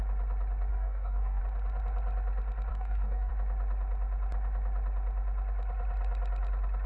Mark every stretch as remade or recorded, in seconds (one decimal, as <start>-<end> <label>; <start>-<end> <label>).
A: 0.0-0.7 recorded; 0.7-1.4 remade; 1.4-2.7 recorded; 2.7-3.3 remade; 3.3-6.9 recorded